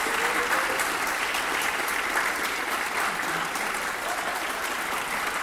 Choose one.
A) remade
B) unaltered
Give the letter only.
B